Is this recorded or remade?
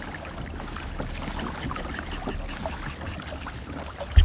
recorded